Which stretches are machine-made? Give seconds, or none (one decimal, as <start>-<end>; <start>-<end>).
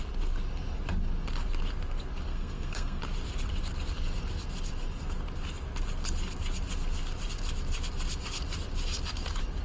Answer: 2.3-3.0